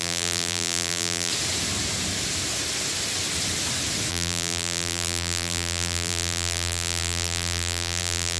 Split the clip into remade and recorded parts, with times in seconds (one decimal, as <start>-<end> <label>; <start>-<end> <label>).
0.0-1.3 remade; 1.3-4.1 recorded; 4.1-8.4 remade